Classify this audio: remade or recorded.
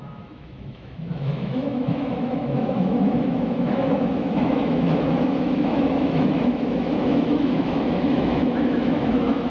remade